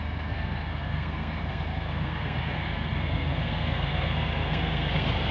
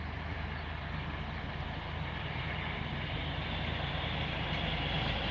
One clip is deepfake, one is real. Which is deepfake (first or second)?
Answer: first